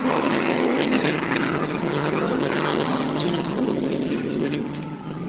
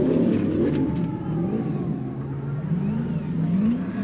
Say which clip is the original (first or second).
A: second